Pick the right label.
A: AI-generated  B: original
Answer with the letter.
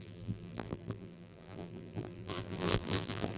A